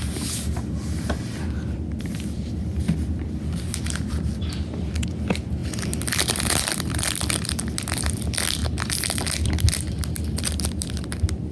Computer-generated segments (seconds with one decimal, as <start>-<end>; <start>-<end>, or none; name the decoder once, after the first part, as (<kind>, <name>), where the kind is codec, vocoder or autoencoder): 5.6-7.5 (vocoder, BigVGAN v2)